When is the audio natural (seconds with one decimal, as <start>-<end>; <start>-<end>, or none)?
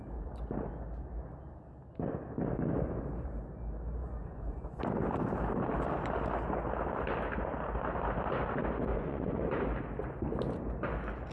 0.0-4.0; 4.8-8.9; 9.4-11.3